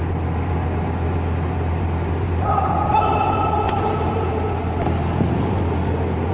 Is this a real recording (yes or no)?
yes